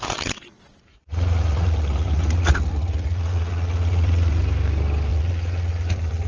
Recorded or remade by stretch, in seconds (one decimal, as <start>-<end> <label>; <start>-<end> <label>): 0.0-0.9 recorded; 0.9-4.4 remade; 4.4-5.1 recorded; 5.1-6.3 remade